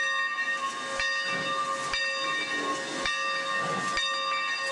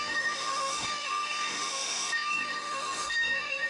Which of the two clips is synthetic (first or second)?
second